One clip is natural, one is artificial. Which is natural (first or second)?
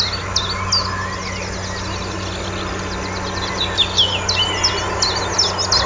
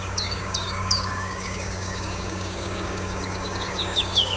first